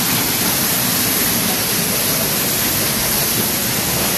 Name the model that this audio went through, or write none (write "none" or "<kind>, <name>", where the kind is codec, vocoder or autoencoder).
none